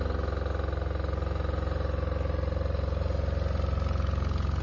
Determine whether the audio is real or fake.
real